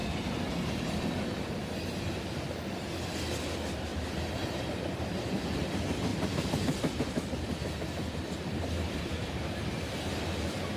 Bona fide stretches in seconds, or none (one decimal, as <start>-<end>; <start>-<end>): 0.0-3.9; 5.4-6.1; 10.0-10.8